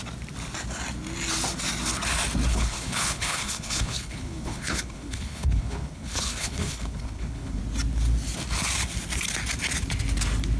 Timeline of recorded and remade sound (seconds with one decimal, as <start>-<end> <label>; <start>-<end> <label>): 0.0-2.5 recorded; 2.5-7.6 remade; 7.6-10.6 recorded